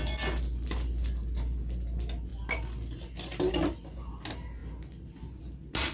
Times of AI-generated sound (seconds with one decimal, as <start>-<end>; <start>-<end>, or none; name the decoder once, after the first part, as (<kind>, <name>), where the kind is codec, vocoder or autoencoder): none